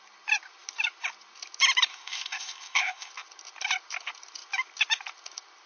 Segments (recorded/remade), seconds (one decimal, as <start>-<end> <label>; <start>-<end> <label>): 0.0-1.9 recorded; 1.9-3.1 remade; 3.1-5.7 recorded